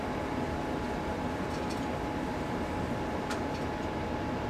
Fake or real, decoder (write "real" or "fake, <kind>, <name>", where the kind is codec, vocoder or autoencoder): real